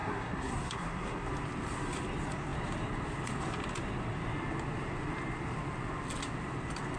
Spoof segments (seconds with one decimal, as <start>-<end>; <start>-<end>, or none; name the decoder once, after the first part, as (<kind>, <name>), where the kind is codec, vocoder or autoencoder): 0.0-1.3 (codec, SNAC)